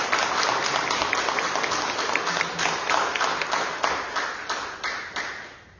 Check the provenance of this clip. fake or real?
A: real